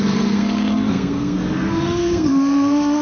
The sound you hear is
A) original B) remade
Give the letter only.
B